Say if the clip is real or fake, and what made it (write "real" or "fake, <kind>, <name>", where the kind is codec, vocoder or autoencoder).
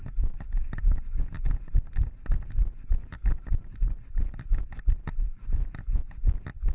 real